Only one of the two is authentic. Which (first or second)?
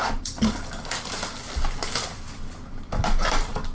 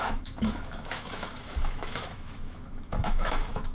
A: first